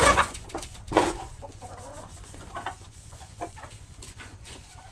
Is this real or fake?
fake